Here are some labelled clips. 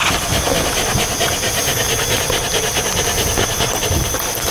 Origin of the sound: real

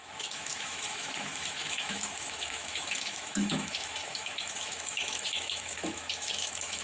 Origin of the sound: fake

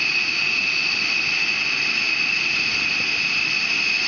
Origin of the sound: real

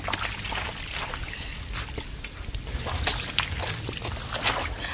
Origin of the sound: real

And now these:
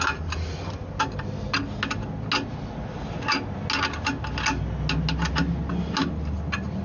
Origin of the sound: real